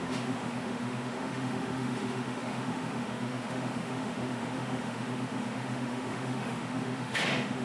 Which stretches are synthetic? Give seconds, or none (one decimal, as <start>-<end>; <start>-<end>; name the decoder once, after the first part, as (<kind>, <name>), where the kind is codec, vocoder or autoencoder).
0.0-7.6 (autoencoder, DAC-VAE)